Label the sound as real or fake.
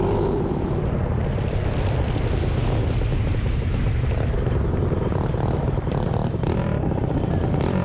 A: real